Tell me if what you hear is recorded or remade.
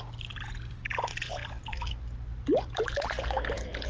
recorded